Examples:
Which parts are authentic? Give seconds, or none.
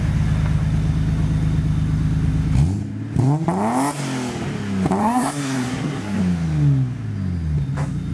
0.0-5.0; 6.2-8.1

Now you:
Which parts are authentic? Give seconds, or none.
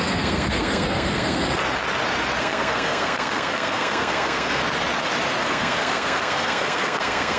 1.6-2.4; 4.6-5.4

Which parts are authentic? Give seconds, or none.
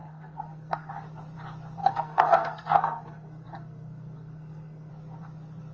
0.9-1.8; 4.9-5.7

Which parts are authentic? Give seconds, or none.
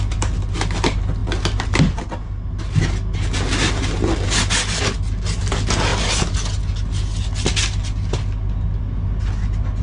0.0-9.8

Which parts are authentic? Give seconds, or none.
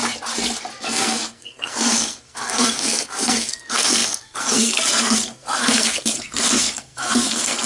0.0-0.8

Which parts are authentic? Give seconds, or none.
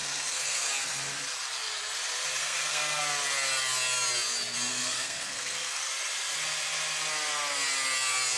0.7-2.4; 3.0-4.7; 5.8-8.4